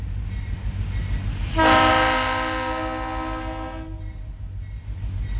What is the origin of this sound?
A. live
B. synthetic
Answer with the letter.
A